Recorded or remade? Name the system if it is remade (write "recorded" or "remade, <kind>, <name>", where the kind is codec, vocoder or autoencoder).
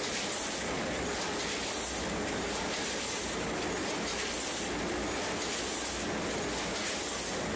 recorded